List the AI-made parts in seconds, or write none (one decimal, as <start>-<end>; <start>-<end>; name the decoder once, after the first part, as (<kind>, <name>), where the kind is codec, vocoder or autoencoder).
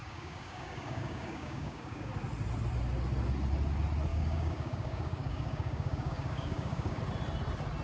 0.0-2.1 (codec, DAC); 4.1-7.0